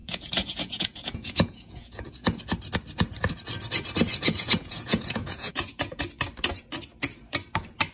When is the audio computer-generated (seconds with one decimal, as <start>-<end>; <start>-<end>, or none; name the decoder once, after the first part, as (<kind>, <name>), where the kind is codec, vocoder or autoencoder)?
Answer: 0.0-2.4 (vocoder, Vocos); 4.1-6.0